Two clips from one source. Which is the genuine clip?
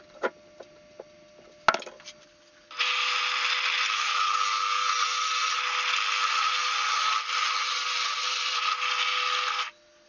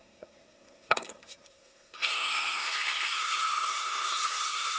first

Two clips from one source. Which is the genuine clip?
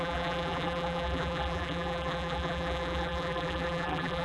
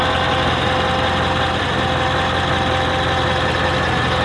second